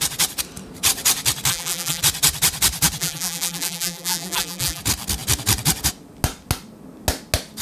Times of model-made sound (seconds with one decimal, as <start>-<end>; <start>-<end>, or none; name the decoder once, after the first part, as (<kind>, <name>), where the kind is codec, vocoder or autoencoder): 1.5-2.0 (vocoder, BigVGAN v2); 3.0-4.8